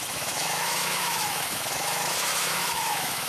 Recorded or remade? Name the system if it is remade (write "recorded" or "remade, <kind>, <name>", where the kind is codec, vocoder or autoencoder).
remade, autoencoder, DAC-VAE